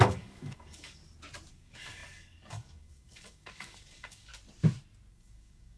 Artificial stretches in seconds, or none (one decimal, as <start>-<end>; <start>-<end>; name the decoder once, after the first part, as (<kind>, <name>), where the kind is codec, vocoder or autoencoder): 0.0-1.0 (codec, DAC); 1.5-4.3; 5.1-5.8